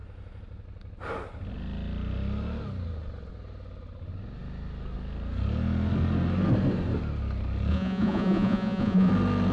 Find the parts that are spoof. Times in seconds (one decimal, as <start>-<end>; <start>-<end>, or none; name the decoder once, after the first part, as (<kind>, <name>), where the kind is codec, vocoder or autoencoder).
7.7-9.1 (vocoder, Vocos)